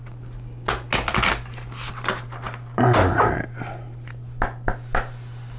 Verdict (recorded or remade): recorded